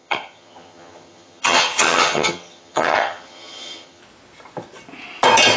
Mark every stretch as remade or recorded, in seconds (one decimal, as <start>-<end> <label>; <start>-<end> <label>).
0.0-4.0 remade; 4.0-5.6 recorded